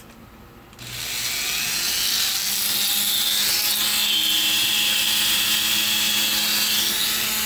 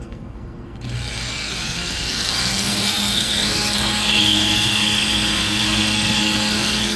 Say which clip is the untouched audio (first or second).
first